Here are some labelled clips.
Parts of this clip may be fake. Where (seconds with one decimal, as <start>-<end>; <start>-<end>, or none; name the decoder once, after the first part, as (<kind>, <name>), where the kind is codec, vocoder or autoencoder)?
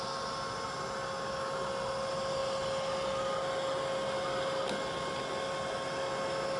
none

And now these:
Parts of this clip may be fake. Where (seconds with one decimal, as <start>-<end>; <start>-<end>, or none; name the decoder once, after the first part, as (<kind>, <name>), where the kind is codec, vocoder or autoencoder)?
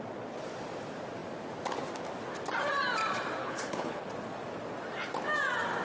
3.4-4.1 (codec, HILCodec)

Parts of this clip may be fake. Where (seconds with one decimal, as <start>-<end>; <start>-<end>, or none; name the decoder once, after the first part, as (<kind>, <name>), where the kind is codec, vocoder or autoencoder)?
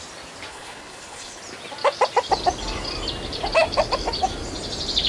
0.5-1.4 (codec, HILCodec)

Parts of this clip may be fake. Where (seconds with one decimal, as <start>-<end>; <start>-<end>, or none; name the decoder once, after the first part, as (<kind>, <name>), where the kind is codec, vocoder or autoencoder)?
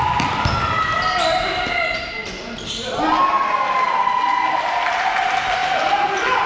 none